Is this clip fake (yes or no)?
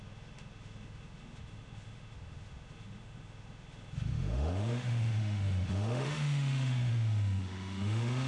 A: yes